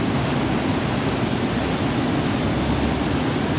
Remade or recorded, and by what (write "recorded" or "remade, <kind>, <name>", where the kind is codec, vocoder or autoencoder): recorded